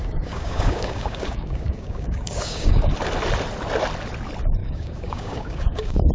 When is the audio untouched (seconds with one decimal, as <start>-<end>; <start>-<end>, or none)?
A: 2.9-4.6